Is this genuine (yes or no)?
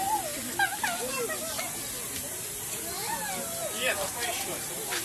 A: yes